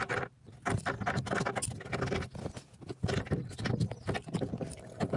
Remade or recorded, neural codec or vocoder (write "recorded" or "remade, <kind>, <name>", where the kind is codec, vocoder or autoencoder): recorded